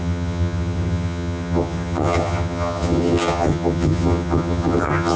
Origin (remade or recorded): remade